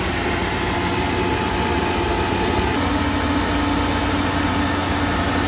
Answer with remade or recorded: recorded